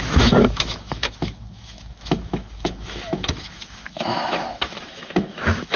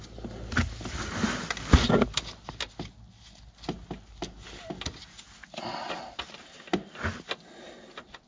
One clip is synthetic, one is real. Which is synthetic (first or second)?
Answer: first